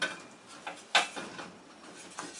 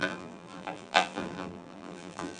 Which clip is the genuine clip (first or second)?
first